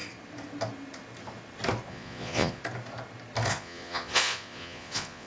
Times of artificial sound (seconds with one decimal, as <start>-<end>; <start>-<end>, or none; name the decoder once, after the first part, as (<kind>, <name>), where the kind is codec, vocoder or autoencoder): 1.9-2.6 (vocoder, Vocos); 3.5-5.3